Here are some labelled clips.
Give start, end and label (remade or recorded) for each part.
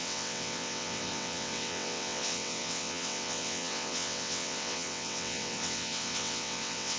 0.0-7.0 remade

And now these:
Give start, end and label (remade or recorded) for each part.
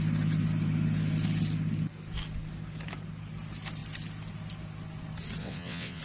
0.0-5.4 recorded; 5.4-6.0 remade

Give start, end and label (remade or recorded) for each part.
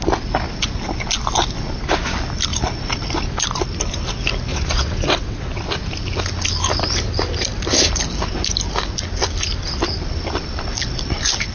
0.0-4.5 recorded; 4.5-5.6 remade; 5.6-11.5 recorded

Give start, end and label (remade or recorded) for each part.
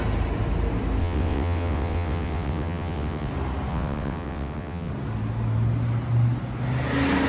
0.0-1.0 recorded; 1.0-3.3 remade; 3.3-3.7 recorded; 3.7-4.9 remade; 4.9-7.3 recorded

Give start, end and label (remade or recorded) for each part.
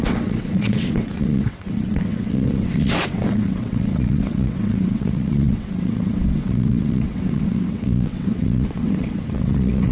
0.0-9.9 remade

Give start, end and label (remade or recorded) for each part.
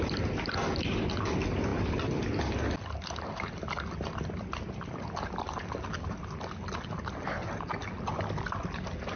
0.0-9.2 recorded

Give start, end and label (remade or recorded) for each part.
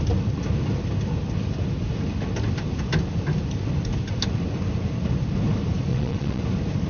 0.0-5.9 recorded; 5.9-6.4 remade; 6.4-6.9 recorded